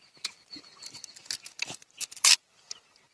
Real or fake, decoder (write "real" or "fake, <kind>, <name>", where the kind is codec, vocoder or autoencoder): real